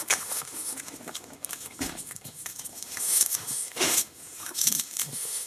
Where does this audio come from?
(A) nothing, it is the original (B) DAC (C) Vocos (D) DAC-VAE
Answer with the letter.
D